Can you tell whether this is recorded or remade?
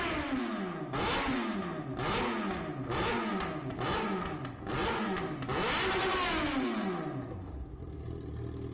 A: recorded